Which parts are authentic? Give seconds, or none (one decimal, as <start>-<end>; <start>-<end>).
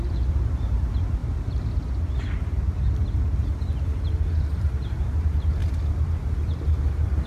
1.2-4.6; 5.6-6.4